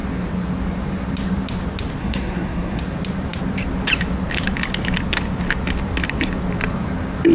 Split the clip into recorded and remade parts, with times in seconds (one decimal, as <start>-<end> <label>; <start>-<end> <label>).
0.0-2.0 recorded; 2.0-2.8 remade; 2.8-7.3 recorded